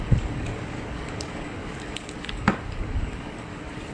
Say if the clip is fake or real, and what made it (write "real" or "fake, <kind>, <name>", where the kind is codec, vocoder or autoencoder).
fake, codec, DAC